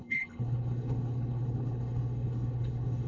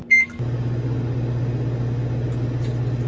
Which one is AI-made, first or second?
first